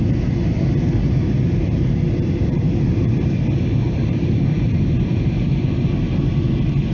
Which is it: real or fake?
fake